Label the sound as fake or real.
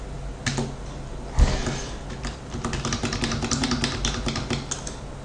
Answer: real